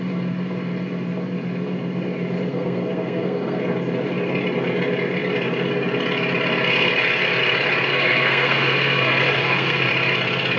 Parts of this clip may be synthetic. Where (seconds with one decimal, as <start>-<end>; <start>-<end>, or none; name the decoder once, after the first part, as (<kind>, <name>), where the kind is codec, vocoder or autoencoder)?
2.5-3.6 (codec, SNAC); 7.9-9.9